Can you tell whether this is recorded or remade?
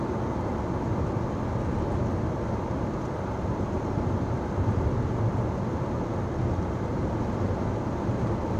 recorded